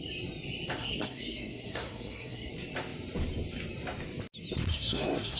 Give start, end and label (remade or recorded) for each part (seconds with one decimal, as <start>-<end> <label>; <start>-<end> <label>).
0.0-0.8 recorded; 0.8-2.5 remade; 2.5-4.7 recorded; 4.7-5.4 remade